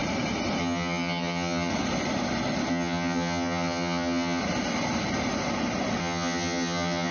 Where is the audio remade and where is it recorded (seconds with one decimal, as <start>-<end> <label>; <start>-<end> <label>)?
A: 0.0-0.6 recorded; 0.6-1.7 remade; 1.7-2.7 recorded; 2.7-4.4 remade; 4.4-6.0 recorded; 6.0-7.1 remade